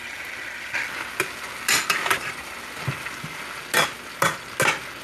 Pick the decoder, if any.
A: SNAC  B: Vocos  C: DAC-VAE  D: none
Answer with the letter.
D